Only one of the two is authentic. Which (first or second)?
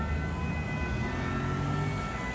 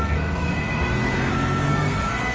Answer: first